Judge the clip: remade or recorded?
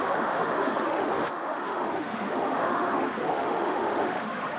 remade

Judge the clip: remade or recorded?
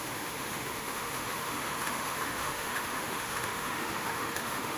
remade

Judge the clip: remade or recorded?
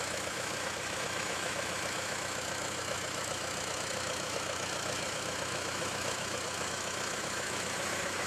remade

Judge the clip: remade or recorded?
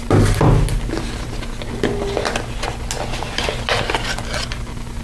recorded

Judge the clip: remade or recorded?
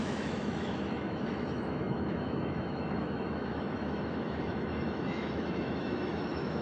remade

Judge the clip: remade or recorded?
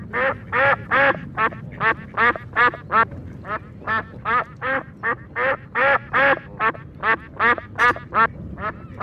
recorded